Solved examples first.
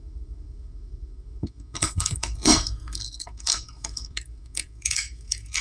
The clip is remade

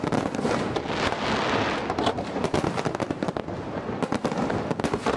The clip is recorded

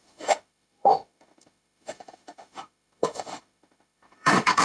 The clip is remade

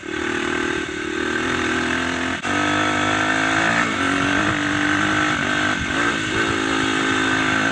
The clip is recorded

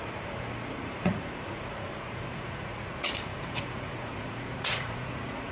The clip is remade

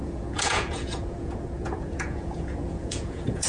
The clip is remade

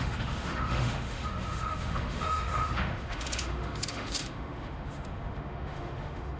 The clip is remade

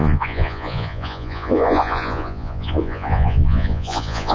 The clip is remade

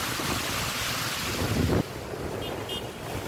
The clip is recorded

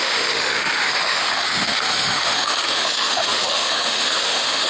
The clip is remade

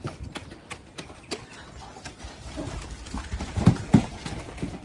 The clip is recorded